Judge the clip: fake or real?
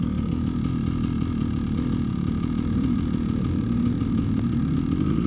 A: real